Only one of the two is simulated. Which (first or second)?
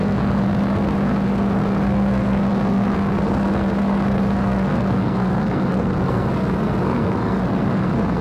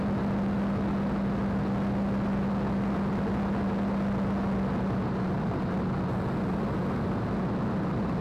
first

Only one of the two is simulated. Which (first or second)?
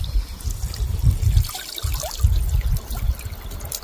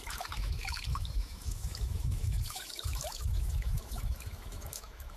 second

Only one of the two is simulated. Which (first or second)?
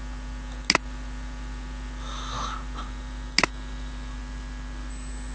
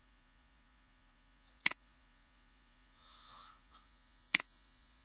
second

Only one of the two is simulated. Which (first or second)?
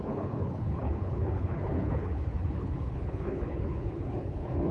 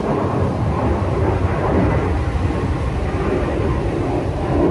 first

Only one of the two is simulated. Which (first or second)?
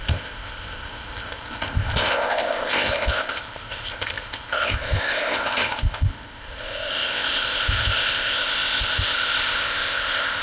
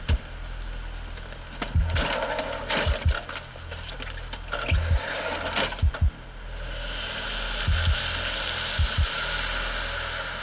first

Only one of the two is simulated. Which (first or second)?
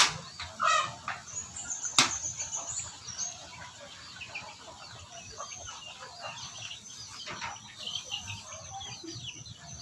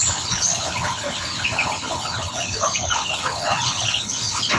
second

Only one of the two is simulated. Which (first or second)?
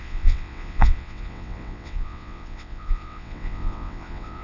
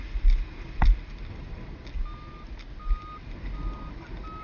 first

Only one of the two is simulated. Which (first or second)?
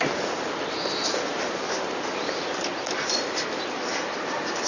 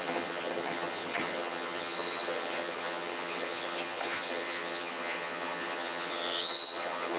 second